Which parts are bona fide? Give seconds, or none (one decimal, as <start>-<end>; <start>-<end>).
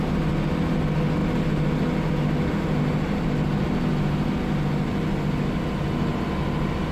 0.0-6.9